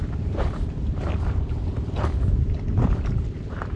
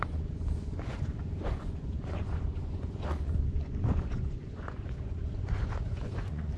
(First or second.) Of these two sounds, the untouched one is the first